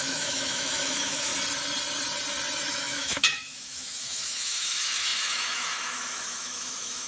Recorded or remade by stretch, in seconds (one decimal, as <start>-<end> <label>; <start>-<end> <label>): 0.0-1.3 remade; 1.3-2.7 recorded; 2.7-7.1 remade